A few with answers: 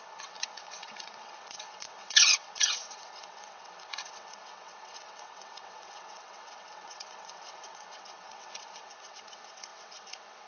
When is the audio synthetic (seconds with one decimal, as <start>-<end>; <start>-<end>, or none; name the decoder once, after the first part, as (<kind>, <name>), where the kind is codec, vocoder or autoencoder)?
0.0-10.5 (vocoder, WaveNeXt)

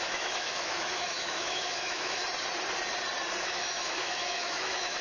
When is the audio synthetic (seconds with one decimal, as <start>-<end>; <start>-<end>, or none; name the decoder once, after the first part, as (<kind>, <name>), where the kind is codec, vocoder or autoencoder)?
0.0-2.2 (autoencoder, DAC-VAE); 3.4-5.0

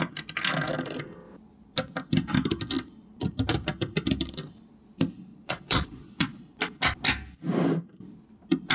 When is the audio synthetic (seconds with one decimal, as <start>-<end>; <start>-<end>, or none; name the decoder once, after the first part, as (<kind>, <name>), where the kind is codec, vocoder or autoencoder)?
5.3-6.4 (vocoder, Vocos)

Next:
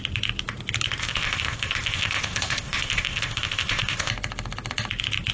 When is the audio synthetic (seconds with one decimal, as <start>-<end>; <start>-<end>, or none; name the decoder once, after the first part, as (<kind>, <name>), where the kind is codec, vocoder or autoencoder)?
1.0-4.1 (codec, ZipCodec)

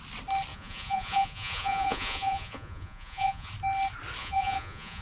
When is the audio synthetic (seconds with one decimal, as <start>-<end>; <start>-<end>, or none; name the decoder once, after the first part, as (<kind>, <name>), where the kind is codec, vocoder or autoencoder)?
0.5-3.5 (vocoder, Vocos); 4.2-5.0

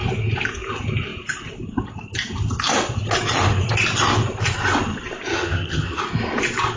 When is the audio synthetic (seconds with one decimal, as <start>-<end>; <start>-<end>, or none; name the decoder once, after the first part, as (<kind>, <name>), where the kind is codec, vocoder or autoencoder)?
5.3-6.0 (vocoder, HiFi-GAN)

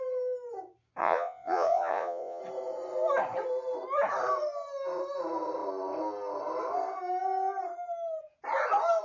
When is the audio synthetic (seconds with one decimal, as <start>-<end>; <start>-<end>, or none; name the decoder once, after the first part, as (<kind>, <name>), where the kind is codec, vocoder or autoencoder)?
1.0-2.4 (vocoder, Vocos)